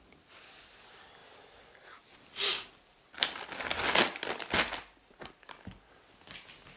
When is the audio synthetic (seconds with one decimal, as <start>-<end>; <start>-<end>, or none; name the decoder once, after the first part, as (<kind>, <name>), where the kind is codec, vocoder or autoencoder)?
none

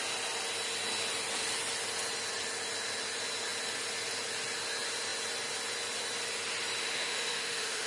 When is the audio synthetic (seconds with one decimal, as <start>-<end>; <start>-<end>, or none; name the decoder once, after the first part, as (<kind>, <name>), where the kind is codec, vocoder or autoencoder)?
6.8-7.9 (autoencoder, DAC-VAE)

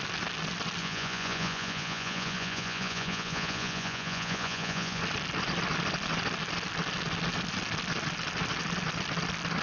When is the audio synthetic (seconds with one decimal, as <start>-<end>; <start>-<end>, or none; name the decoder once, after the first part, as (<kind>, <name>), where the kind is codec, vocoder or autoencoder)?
0.8-5.0 (vocoder, Vocos)

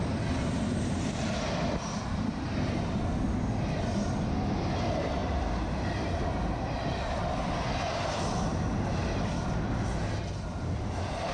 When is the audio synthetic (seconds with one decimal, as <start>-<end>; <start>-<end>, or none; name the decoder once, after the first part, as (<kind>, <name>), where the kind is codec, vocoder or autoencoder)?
none